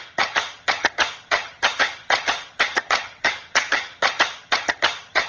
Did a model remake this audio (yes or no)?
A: yes